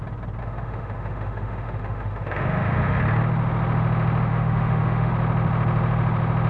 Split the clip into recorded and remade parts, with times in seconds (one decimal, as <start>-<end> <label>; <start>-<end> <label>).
0.0-0.4 recorded; 0.4-3.0 remade; 3.0-4.3 recorded; 4.3-5.1 remade; 5.1-6.5 recorded